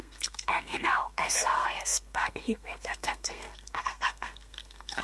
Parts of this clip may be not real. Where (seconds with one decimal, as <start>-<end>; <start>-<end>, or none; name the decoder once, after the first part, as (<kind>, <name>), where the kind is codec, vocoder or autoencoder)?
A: 0.0-5.0 (codec, SNAC)